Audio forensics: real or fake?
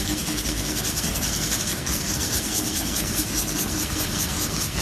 fake